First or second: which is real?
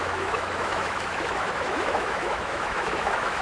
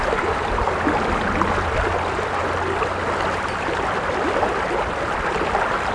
second